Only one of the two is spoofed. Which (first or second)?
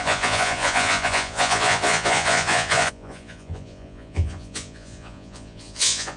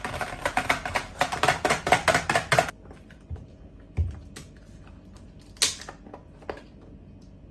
first